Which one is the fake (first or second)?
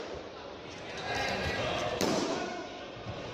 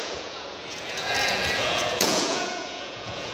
second